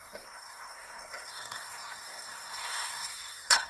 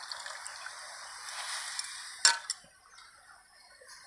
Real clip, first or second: second